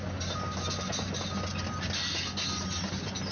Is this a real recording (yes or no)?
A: yes